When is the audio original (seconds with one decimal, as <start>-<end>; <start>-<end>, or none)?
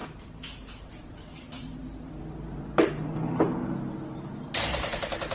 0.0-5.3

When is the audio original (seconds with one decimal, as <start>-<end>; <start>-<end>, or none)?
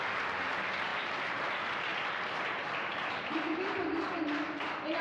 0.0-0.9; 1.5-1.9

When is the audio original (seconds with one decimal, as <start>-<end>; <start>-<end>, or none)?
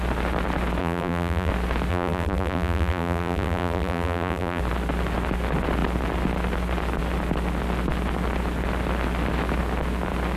0.0-0.8; 1.5-1.9; 4.6-10.4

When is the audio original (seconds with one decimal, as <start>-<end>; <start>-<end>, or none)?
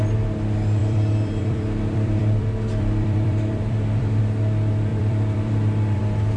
0.0-0.8; 4.2-4.9; 6.0-6.4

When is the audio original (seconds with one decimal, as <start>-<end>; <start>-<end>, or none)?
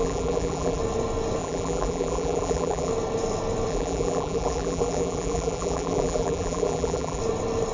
0.8-1.4; 2.9-3.7; 7.2-7.7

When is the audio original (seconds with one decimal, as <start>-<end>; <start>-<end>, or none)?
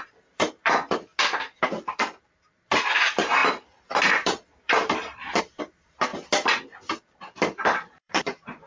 1.1-2.4; 6.1-7.2